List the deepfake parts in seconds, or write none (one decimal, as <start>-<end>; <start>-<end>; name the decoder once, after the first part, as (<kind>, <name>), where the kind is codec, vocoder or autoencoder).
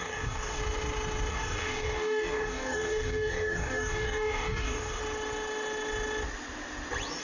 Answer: 0.0-0.6 (codec, DAC); 1.3-5.0